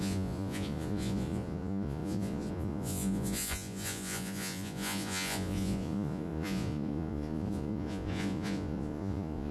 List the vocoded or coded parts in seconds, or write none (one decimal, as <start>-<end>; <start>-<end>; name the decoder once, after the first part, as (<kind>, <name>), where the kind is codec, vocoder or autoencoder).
0.0-9.5 (vocoder, Vocos)